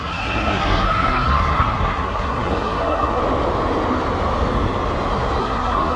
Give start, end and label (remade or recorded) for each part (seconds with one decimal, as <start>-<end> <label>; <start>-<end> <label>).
0.0-3.2 remade; 3.2-5.4 recorded; 5.4-6.0 remade